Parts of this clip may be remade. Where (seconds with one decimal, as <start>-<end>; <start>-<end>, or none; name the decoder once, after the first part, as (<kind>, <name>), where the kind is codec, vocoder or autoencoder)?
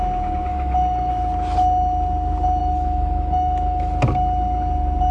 0.5-1.1 (autoencoder, DAC-VAE); 2.6-3.9